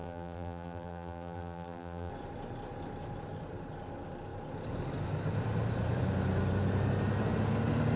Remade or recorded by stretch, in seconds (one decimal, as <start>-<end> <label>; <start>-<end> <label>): 0.0-2.1 remade; 2.1-8.0 recorded